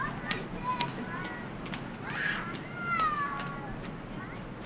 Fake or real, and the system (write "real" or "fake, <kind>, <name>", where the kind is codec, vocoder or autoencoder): real